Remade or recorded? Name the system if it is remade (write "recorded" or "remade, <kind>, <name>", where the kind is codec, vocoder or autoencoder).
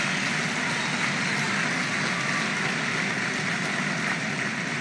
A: recorded